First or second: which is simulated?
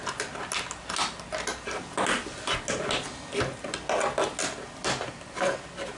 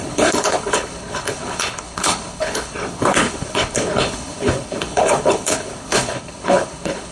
second